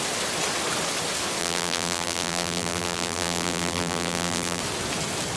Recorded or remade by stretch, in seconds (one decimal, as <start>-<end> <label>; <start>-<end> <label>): 0.0-1.4 recorded; 1.4-4.6 remade; 4.6-5.4 recorded